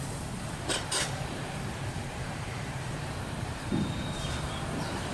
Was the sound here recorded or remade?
remade